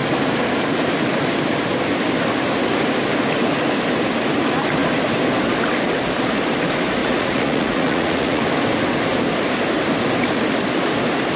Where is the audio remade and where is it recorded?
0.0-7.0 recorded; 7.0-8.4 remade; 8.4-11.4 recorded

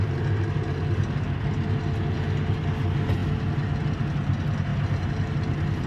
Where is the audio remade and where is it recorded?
0.0-5.9 recorded

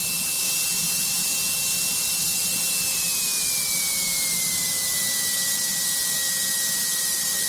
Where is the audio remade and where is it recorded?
0.0-1.3 remade; 1.3-2.2 recorded; 2.2-3.3 remade; 3.3-7.0 recorded; 7.0-7.5 remade

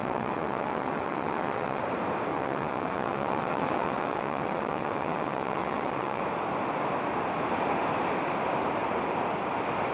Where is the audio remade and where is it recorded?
0.0-1.8 remade; 1.8-2.3 recorded; 2.3-6.2 remade; 6.2-9.9 recorded

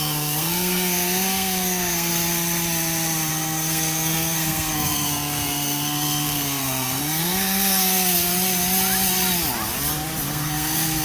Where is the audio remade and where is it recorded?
0.0-2.1 remade; 2.1-3.3 recorded; 3.3-8.3 remade; 8.3-10.3 recorded; 10.3-11.0 remade